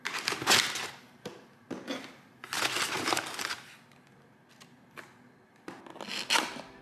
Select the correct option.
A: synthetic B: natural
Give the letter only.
B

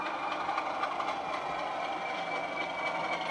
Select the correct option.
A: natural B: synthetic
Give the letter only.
A